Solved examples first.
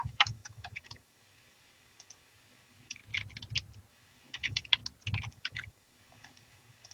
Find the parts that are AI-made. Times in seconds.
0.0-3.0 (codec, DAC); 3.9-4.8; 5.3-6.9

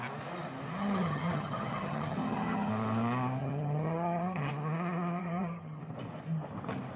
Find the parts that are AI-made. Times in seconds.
0.8-2.7 (vocoder, HiFi-GAN); 3.4-4.5; 5.2-5.8